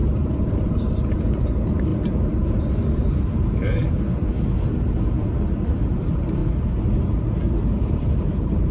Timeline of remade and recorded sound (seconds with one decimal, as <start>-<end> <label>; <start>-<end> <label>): 0.0-3.8 remade; 3.8-5.9 recorded; 5.9-6.4 remade; 6.4-7.7 recorded; 7.7-8.7 remade